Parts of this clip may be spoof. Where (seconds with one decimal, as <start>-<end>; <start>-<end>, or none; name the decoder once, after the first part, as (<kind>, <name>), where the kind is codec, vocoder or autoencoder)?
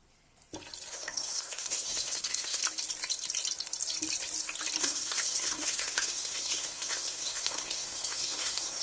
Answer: 0.9-2.6 (codec, SNAC); 4.8-8.8